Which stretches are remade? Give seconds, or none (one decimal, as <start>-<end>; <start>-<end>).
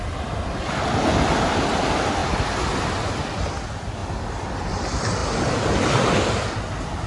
none